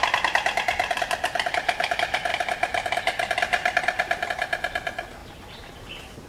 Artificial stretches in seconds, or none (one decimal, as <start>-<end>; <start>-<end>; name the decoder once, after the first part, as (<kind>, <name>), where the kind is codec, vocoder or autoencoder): 5.2-6.3 (vocoder, BigVGAN v2)